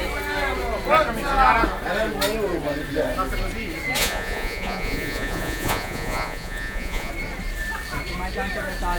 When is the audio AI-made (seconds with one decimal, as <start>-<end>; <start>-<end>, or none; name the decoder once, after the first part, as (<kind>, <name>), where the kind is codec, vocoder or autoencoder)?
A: 4.0-7.1 (vocoder, Vocos)

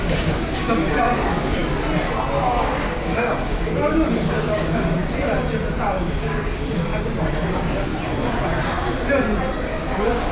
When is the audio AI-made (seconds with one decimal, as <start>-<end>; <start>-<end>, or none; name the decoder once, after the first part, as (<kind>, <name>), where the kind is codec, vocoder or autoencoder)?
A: 0.0-1.6 (codec, DAC); 2.4-5.0; 5.7-6.9; 7.5-7.9; 9.6-10.3